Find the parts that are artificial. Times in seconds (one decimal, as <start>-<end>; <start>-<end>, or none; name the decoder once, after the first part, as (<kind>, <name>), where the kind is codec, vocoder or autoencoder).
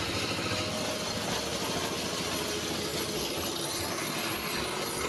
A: none